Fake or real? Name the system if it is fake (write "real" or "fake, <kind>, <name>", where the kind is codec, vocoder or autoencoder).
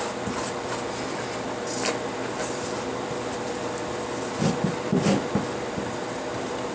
real